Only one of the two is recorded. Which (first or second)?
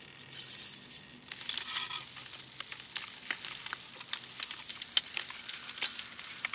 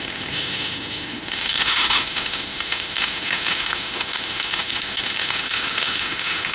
first